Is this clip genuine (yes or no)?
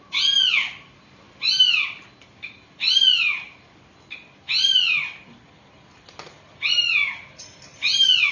yes